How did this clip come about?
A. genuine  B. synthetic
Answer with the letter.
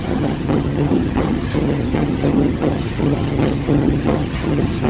B